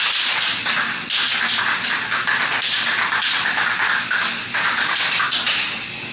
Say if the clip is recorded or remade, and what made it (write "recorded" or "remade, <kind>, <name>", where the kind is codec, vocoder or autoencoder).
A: recorded